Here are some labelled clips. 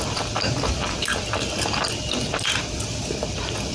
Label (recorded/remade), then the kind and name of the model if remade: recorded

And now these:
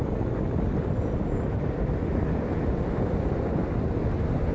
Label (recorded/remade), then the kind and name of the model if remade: recorded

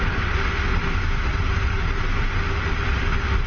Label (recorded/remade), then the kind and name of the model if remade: recorded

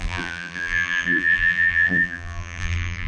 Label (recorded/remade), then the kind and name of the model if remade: remade, vocoder, BigVGAN v2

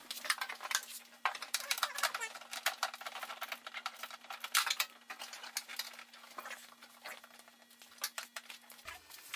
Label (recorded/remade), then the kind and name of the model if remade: recorded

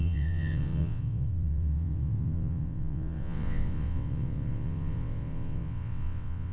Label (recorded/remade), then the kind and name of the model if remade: remade, vocoder, WaveNeXt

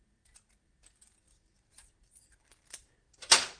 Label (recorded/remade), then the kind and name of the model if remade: remade, vocoder, BigVGAN v2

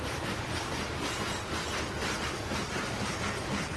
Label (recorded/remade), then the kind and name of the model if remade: recorded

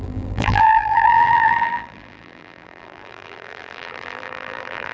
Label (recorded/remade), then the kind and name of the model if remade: remade, vocoder, BigVGAN v2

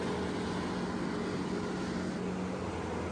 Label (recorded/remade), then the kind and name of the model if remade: recorded